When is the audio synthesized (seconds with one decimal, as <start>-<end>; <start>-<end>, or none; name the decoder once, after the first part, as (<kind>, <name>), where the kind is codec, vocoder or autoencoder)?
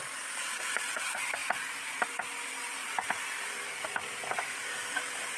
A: none